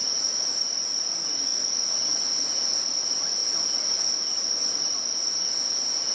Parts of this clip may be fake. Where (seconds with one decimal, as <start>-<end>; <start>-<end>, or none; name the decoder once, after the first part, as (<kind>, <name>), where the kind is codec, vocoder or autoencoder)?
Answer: 0.0-1.1 (vocoder, BigVGAN v2)

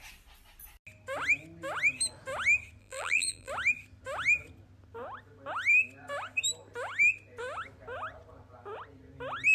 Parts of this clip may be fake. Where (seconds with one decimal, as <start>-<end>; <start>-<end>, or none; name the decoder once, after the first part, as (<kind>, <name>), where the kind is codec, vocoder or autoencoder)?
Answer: 2.8-3.5 (vocoder, BigVGAN v2)

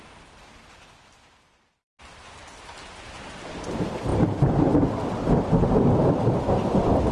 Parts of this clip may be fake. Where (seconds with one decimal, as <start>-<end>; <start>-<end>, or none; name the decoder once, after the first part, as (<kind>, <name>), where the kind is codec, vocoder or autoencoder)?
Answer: 0.0-7.1 (vocoder, BigVGAN v2)